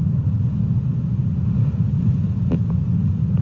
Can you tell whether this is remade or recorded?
recorded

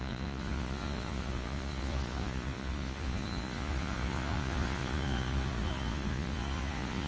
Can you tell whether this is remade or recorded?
remade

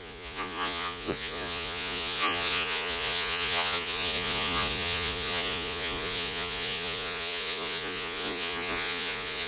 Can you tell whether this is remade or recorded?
remade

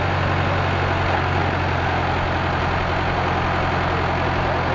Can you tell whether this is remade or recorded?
recorded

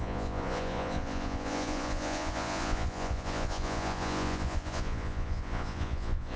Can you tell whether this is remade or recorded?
remade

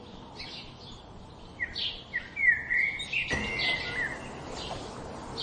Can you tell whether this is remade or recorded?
recorded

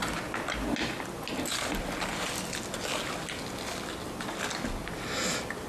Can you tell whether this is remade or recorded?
recorded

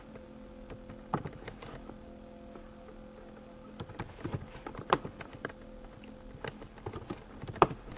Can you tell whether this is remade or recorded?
recorded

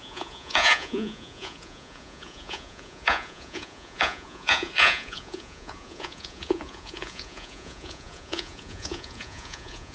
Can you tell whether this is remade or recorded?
remade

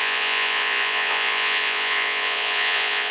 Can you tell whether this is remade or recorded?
remade